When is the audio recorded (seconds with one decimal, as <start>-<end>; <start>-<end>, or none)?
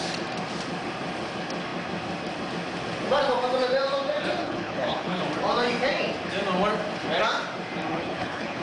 0.0-4.4; 5.2-7.9